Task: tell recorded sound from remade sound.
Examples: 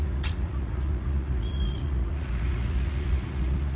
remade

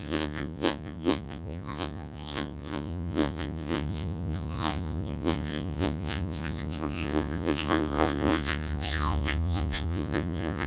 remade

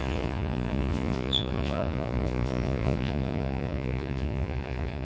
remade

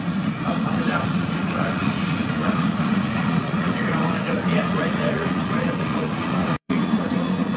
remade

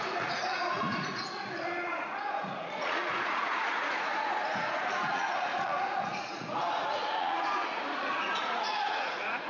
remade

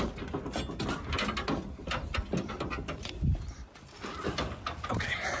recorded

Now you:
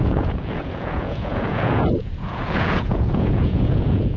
remade